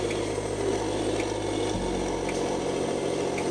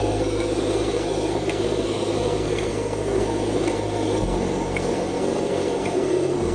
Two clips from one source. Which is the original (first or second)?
first